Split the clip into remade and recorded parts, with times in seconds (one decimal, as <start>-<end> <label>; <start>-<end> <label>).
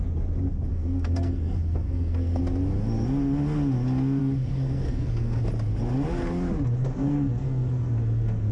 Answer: 0.0-0.7 recorded; 0.7-2.4 remade; 2.4-4.2 recorded; 4.2-5.4 remade; 5.4-6.8 recorded; 6.8-8.5 remade